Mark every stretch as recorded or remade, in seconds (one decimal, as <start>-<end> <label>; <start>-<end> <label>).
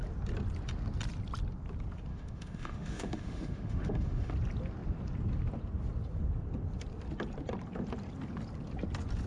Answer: 0.0-2.1 recorded; 2.1-4.3 remade; 4.3-9.3 recorded